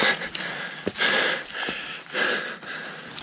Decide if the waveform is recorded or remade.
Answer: recorded